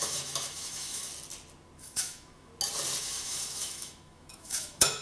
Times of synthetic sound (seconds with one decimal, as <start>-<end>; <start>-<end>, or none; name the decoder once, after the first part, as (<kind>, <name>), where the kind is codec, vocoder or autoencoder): 0.0-1.1 (autoencoder, DAC-VAE); 1.8-2.5; 3.0-5.0